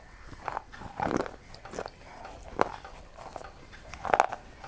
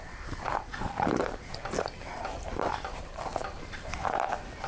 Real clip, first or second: first